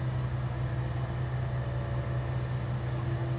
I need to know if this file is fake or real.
real